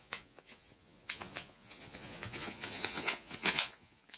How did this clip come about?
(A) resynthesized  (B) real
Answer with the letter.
A